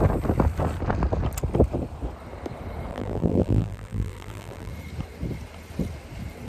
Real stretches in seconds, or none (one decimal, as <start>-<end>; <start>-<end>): 0.0-2.9; 4.7-6.5